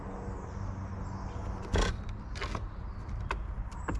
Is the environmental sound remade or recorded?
recorded